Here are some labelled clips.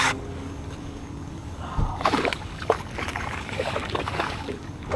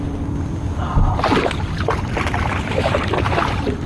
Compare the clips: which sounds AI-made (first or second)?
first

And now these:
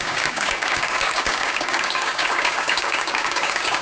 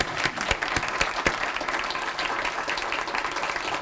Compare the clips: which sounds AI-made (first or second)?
first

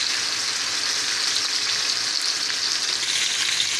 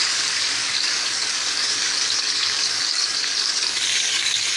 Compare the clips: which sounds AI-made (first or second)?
second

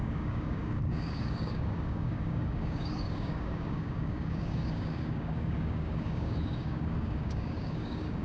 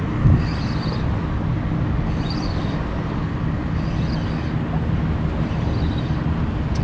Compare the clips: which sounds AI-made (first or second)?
first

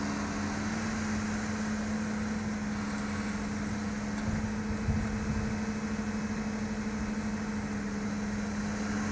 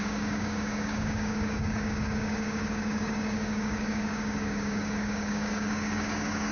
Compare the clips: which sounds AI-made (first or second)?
second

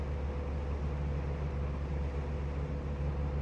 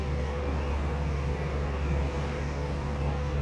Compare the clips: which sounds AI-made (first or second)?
second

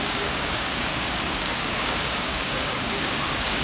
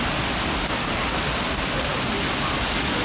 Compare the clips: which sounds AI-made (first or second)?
first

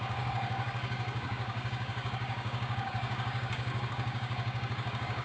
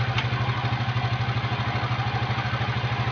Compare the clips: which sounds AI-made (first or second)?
first